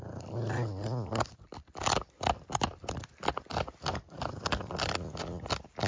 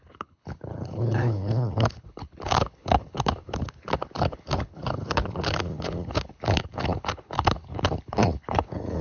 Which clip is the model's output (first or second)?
second